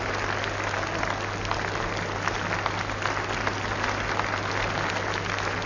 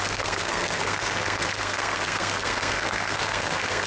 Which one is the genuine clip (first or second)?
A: first